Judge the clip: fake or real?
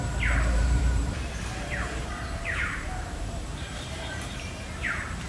fake